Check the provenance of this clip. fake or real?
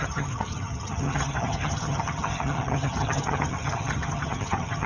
fake